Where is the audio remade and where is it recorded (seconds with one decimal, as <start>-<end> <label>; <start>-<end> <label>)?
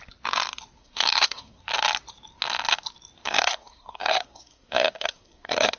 0.0-0.8 recorded; 0.8-1.6 remade; 1.6-3.2 recorded; 3.2-5.8 remade